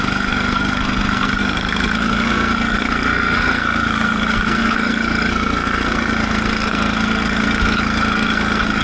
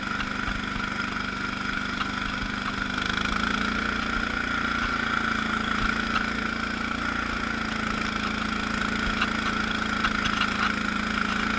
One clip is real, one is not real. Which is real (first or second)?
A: second